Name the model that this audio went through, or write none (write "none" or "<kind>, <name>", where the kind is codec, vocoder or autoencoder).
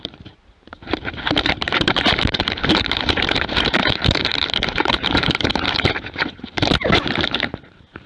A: vocoder, BigVGAN v2